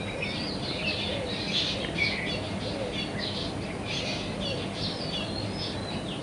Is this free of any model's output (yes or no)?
yes